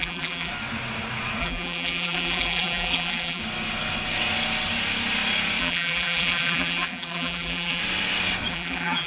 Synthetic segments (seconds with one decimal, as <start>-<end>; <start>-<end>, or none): 0.0-0.5; 1.4-3.4; 5.6-7.8; 8.5-9.1